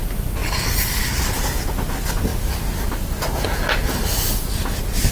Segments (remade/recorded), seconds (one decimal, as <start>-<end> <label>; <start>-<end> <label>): 0.0-5.1 recorded